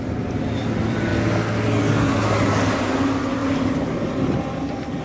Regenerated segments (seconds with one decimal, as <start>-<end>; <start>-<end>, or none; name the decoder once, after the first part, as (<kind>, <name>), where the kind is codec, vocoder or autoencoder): 0.0-1.1 (vocoder, BigVGAN v2); 2.7-5.0